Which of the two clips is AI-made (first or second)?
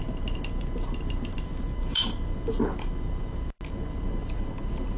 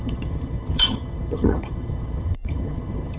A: second